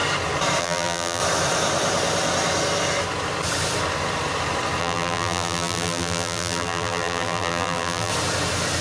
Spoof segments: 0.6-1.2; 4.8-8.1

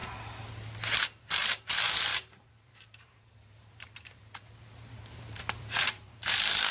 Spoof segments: 1.0-6.7

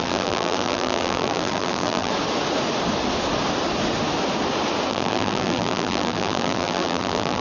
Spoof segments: 0.0-2.1; 4.9-7.4

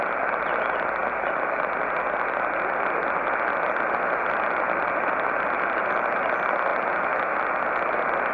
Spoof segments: none

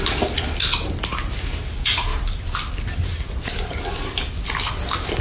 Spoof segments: 2.1-3.8